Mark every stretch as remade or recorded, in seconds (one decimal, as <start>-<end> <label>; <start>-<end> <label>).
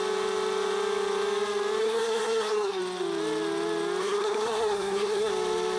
0.0-1.8 recorded; 1.8-2.8 remade; 2.8-4.0 recorded; 4.0-5.3 remade; 5.3-5.8 recorded